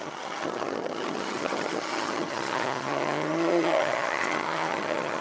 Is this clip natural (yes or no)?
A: no